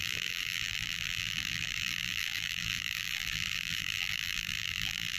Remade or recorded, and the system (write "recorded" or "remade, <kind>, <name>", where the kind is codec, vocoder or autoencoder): remade, vocoder, BigVGAN v2